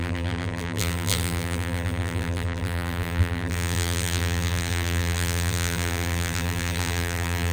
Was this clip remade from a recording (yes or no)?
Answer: yes